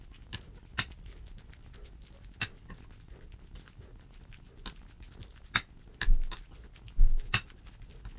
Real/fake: real